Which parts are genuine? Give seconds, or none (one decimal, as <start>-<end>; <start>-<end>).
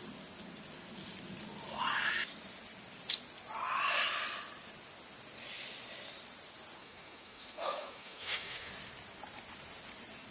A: 0.0-6.8; 8.7-10.3